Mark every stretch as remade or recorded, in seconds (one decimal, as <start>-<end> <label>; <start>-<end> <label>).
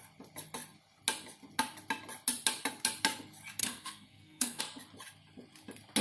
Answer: 0.0-3.6 recorded; 3.6-4.6 remade; 4.6-6.0 recorded